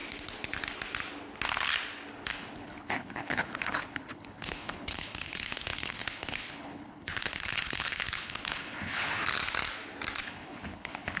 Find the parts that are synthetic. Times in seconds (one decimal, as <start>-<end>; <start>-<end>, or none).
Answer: 2.3-9.2; 10.2-11.2